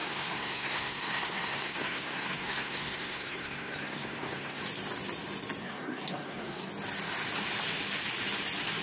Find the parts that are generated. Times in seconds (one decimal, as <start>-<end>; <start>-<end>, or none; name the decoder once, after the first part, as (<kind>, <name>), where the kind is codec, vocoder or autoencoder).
0.0-4.6 (codec, SNAC); 5.6-6.7